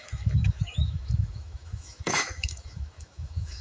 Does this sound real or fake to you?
fake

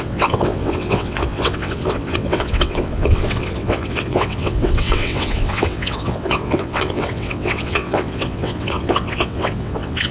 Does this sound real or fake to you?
fake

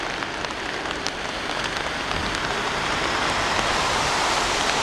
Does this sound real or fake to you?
real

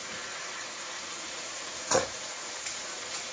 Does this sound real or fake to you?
fake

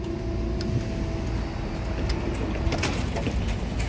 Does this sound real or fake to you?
real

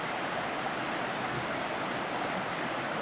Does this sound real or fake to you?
real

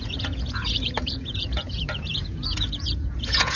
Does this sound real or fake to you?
fake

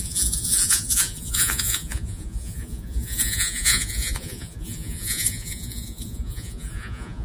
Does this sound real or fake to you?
fake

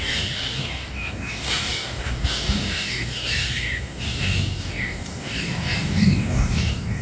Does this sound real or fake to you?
fake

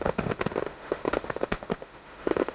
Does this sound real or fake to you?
fake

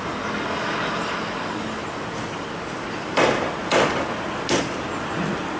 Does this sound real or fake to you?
real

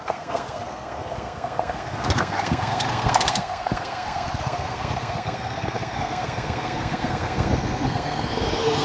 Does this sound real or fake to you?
fake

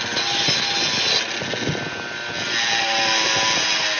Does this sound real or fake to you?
real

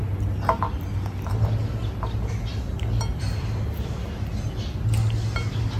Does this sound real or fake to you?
real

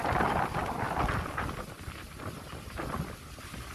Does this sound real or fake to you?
real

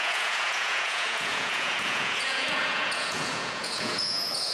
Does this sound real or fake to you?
fake